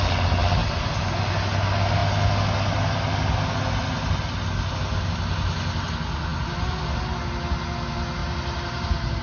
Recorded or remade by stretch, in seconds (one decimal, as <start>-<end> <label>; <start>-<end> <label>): 0.0-0.6 recorded; 0.6-1.2 remade; 1.2-8.2 recorded; 8.2-9.2 remade